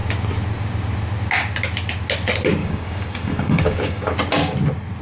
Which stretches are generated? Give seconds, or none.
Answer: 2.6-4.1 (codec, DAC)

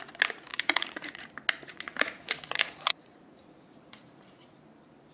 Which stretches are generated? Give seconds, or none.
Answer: 0.5-1.2 (vocoder, Vocos); 1.7-4.6

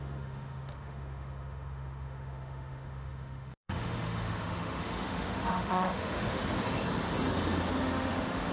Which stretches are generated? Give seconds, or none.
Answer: 0.0-6.4 (autoencoder, DAC-VAE); 7.8-8.5